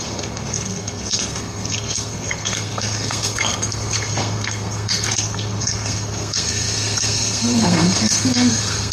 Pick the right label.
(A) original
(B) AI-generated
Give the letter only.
B